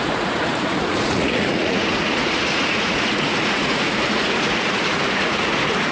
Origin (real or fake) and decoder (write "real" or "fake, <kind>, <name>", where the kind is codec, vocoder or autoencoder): fake, vocoder, Vocos